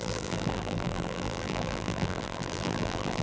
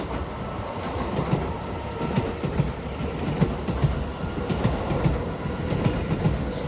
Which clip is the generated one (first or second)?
first